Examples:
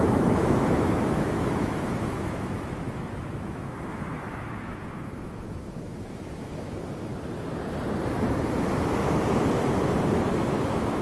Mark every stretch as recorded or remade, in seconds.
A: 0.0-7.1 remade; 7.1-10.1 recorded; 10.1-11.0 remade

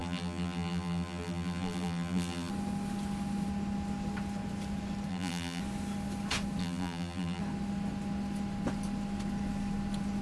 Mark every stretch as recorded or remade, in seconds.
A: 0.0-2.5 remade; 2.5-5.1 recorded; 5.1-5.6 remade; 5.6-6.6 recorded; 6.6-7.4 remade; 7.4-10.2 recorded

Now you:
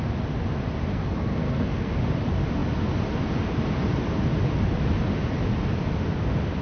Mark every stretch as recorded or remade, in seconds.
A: 0.0-0.9 recorded; 0.9-2.0 remade; 2.0-6.6 recorded